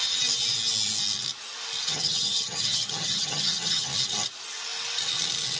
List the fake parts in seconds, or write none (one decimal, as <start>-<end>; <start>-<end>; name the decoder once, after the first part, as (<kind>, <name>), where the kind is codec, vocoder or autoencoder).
1.8-3.9 (vocoder, HiFi-GAN)

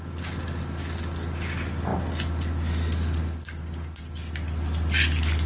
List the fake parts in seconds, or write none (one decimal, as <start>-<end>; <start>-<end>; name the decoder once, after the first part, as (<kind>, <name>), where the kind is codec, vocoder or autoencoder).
none

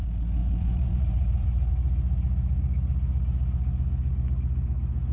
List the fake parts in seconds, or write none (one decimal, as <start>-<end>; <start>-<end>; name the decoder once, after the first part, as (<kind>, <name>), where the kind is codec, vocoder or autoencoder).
0.4-1.7 (vocoder, BigVGAN v2)

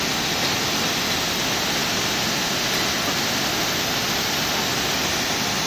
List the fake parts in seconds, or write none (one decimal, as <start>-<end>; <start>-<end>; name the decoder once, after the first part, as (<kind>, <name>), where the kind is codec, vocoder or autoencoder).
none

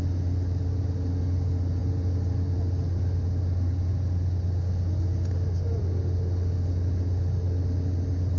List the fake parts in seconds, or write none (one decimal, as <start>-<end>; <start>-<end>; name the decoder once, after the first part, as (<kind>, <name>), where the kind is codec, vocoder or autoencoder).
none

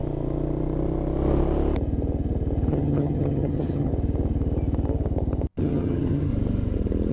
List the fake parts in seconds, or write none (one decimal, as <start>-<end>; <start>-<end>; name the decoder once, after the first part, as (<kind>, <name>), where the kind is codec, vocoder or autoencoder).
2.7-3.9 (vocoder, HiFi-GAN); 5.6-6.3